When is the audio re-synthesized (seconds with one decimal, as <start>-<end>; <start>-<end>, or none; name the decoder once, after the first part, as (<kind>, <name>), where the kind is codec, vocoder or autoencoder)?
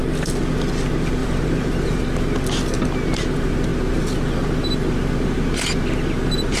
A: 1.2-2.0 (vocoder, BigVGAN v2)